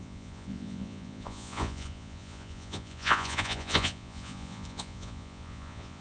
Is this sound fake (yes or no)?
yes